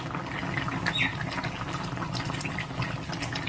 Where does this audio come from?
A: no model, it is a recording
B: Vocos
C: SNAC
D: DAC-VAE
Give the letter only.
A